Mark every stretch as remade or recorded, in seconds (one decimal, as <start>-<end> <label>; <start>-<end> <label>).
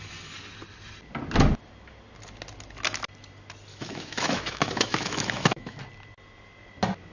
0.0-3.7 recorded; 3.7-5.8 remade; 5.8-7.1 recorded